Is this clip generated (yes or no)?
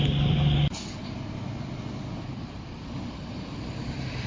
no